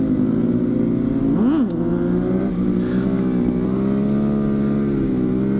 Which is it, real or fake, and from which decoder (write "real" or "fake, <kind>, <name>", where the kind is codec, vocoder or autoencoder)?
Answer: real